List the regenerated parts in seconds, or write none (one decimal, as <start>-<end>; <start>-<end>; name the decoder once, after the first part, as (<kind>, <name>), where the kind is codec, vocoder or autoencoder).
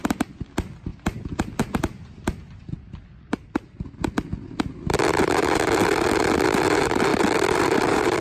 7.1-8.2 (vocoder, BigVGAN v2)